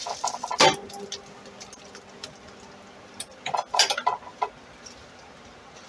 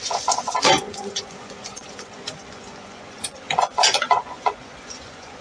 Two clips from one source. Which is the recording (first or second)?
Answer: first